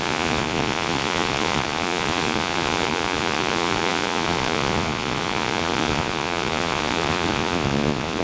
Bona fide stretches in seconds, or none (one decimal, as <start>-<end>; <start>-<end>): none